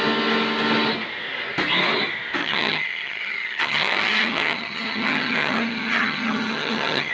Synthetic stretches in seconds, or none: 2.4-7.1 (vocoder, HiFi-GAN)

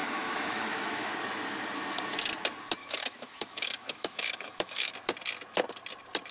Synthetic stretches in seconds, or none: 0.0-1.1 (autoencoder, DAC-VAE); 2.8-4.9

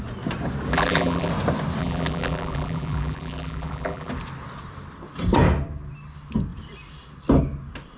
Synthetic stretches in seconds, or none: 0.7-1.3 (vocoder, BigVGAN v2); 1.8-4.1

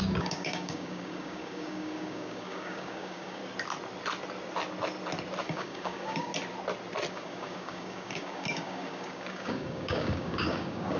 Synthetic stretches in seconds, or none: 0.0-3.4 (codec, DAC); 5.4-6.3; 7.1-11.0